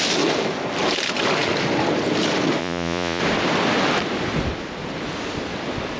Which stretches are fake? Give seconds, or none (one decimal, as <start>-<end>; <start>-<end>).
2.6-3.2